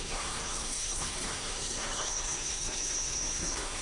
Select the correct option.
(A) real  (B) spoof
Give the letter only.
B